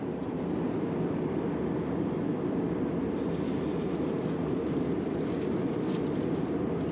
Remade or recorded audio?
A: recorded